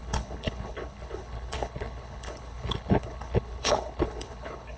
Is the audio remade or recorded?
remade